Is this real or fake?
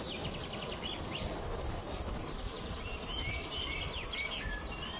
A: fake